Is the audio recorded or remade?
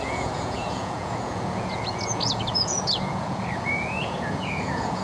remade